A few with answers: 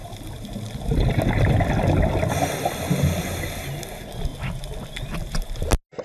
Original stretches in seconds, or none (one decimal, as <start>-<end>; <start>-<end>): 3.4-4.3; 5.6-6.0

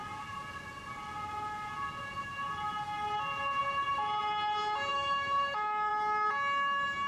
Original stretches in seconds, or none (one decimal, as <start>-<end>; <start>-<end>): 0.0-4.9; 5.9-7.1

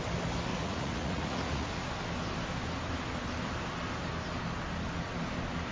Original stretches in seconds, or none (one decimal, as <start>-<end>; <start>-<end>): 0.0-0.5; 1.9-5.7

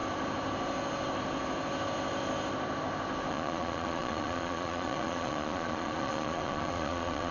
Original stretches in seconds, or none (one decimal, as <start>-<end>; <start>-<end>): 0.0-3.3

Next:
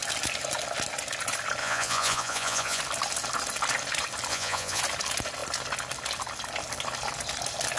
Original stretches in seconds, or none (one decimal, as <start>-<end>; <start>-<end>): 0.0-1.6; 2.8-4.3; 4.8-7.8